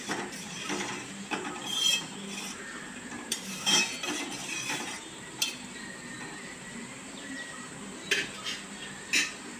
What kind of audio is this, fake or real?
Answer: fake